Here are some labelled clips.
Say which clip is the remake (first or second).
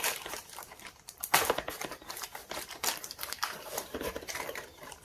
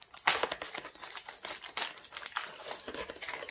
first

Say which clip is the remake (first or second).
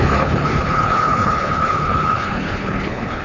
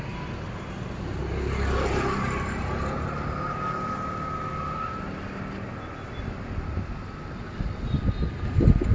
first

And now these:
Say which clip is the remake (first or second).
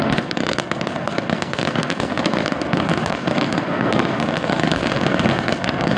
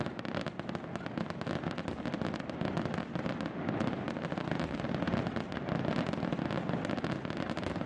first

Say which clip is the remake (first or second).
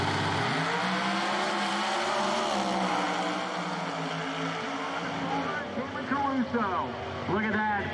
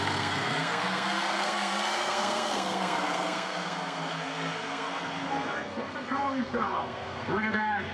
second